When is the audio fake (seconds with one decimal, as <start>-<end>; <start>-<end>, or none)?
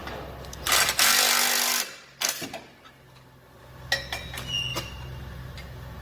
4.7-5.6